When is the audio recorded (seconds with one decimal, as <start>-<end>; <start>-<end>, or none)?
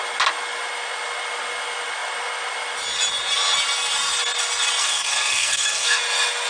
0.0-4.8; 6.0-6.5